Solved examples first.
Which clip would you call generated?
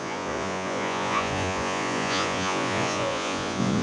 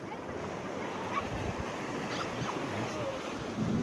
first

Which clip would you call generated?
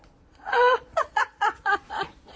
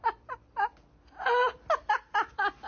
first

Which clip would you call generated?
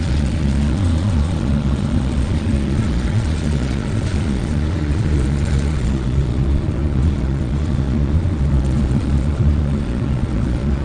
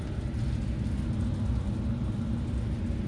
first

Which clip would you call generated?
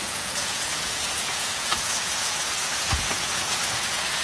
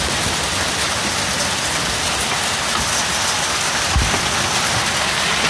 first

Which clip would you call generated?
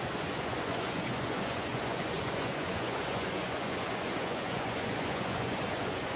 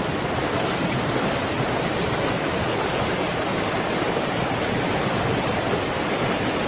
first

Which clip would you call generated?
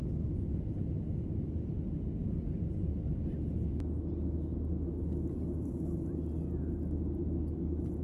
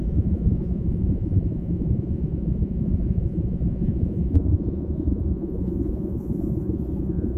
second